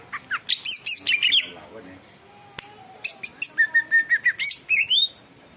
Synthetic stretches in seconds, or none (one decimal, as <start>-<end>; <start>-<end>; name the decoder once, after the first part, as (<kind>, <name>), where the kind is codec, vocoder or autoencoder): none